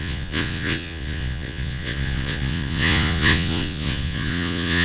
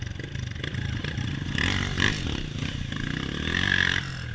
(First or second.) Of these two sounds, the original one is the second